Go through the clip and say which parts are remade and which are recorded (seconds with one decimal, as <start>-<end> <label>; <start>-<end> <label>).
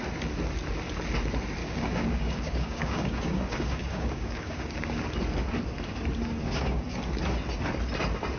0.0-1.6 recorded; 1.6-5.0 remade; 5.0-6.4 recorded; 6.4-7.0 remade; 7.0-8.4 recorded